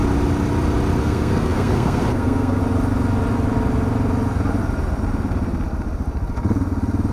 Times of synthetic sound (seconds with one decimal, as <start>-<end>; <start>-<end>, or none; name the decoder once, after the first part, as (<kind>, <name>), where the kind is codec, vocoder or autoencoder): 1.0-2.6 (codec, SNAC)